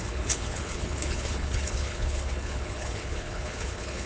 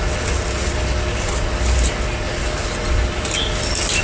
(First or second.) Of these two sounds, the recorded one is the second